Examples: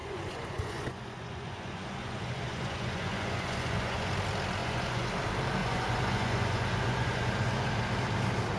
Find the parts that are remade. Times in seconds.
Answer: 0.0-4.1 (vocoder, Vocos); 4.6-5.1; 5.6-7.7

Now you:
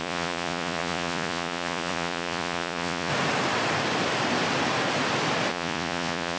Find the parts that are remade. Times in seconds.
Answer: 0.0-3.1 (vocoder, Vocos); 5.5-6.4

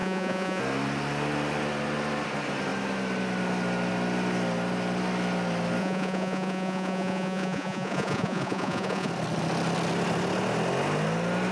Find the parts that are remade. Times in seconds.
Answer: 0.0-0.6 (vocoder, Vocos); 5.8-9.1

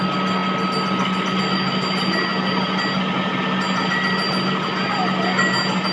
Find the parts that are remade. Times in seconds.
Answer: none

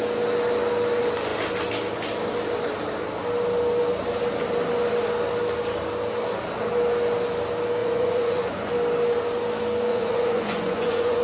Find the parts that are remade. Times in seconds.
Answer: 7.8-8.7 (vocoder, Vocos); 9.9-11.2

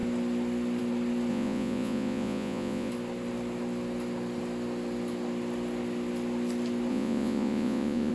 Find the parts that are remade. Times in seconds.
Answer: 1.3-2.9 (vocoder, Vocos); 6.9-8.1